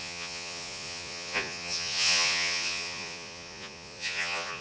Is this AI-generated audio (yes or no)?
yes